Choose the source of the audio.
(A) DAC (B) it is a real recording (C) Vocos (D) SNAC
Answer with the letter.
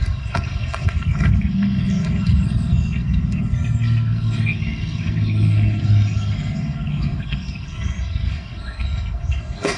D